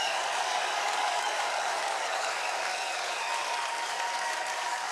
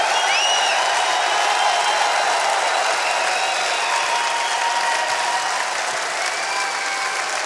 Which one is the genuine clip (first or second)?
second